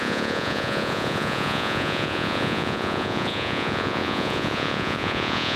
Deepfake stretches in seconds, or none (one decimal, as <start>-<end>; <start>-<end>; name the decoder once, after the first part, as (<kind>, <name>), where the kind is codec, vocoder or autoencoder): 0.0-5.6 (vocoder, Vocos)